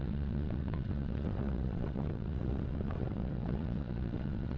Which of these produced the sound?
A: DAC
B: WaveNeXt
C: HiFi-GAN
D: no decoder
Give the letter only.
B